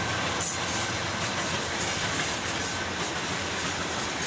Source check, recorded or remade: recorded